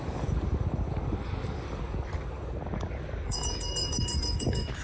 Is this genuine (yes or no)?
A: no